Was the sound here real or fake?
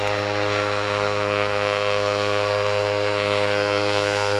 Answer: fake